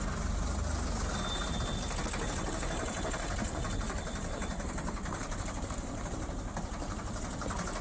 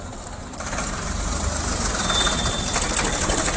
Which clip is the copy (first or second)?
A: second